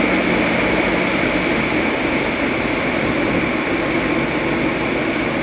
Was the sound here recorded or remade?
recorded